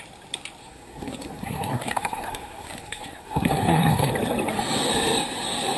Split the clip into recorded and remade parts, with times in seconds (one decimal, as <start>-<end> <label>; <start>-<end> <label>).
0.0-0.6 recorded; 0.6-4.1 remade; 4.1-5.8 recorded